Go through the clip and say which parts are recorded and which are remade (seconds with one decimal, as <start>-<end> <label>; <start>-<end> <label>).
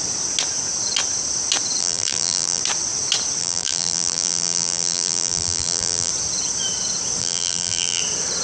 0.0-1.8 recorded; 1.8-2.6 remade; 2.6-3.4 recorded; 3.4-6.1 remade; 6.1-7.2 recorded; 7.2-8.0 remade; 8.0-8.4 recorded